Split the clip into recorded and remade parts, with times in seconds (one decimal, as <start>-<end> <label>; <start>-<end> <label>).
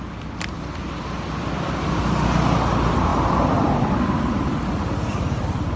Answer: 0.0-5.8 remade